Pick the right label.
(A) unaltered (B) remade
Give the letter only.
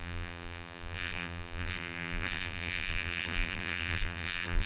B